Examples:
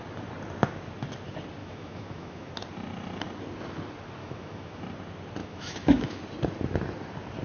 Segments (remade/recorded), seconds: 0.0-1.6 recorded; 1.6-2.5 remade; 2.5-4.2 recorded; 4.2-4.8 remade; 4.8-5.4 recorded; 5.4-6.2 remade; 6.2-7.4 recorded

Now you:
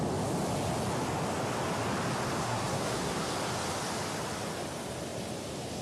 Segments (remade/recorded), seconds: 0.0-2.4 recorded; 2.4-3.3 remade; 3.3-5.8 recorded

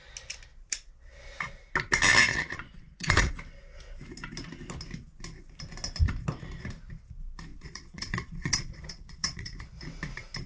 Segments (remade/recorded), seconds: 0.0-2.3 recorded; 2.3-3.3 remade; 3.3-7.5 recorded; 7.5-9.7 remade; 9.7-10.5 recorded